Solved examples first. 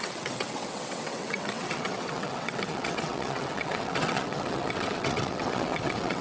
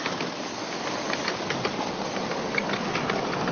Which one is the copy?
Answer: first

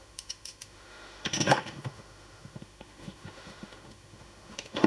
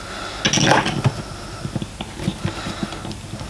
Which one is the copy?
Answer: first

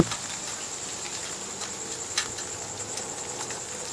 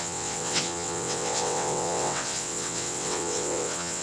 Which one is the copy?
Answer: second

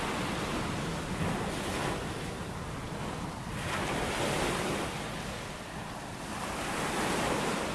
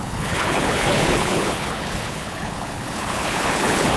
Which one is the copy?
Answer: second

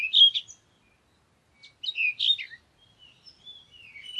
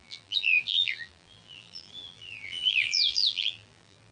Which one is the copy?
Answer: second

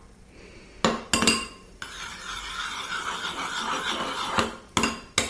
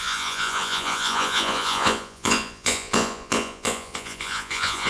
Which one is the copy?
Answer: second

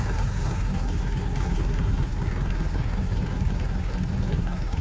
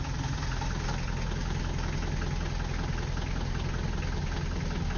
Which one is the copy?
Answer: first